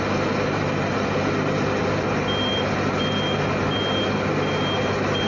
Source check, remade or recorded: recorded